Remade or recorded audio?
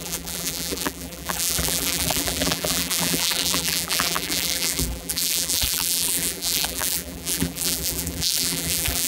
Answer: remade